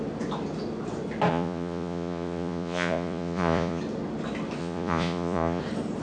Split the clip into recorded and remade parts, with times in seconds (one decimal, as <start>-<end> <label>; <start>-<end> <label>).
0.0-1.3 recorded; 1.3-3.8 remade; 3.8-4.6 recorded; 4.6-5.6 remade; 5.6-6.0 recorded